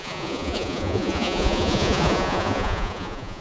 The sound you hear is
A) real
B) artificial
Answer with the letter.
B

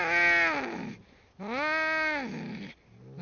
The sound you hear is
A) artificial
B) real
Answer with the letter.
B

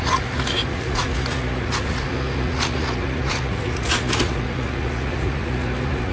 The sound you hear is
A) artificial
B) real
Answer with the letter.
A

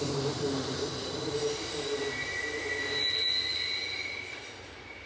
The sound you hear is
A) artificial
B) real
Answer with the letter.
B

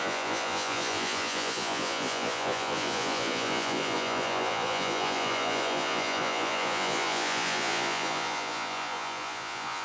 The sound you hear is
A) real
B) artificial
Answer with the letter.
B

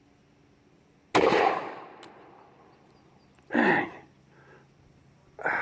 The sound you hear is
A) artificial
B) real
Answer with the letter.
B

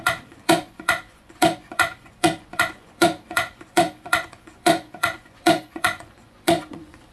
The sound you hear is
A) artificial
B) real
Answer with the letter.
A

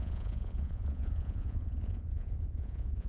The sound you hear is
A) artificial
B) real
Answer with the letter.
A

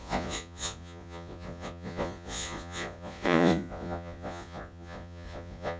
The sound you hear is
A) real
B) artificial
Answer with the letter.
B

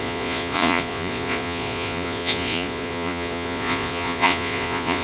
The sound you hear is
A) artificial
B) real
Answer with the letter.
A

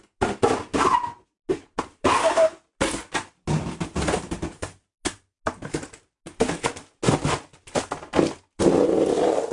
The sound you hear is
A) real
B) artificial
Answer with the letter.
A